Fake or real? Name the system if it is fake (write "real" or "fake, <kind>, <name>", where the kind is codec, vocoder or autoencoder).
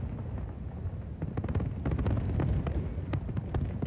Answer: real